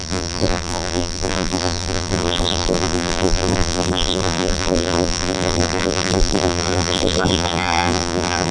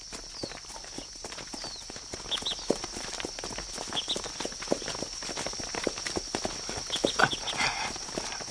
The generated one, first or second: first